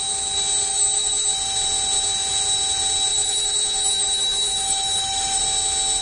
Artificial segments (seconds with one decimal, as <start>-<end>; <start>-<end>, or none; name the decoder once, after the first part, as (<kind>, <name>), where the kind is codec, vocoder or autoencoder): 0.7-1.3 (autoencoder, DAC-VAE); 3.1-5.4